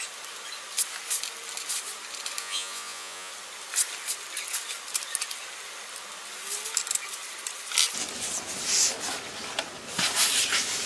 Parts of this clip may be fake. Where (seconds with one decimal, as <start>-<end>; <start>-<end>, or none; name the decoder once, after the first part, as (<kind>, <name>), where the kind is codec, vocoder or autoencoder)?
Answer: 2.4-3.3 (vocoder, Vocos)